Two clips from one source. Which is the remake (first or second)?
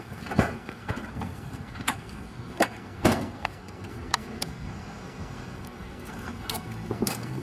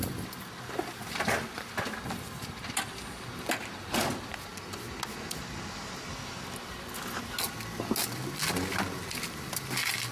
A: first